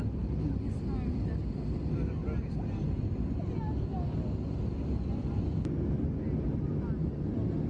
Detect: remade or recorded recorded